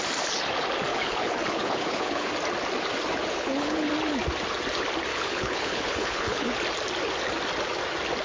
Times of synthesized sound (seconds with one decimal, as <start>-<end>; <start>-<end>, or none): 0.9-2.3; 3.3-3.9; 5.1-6.5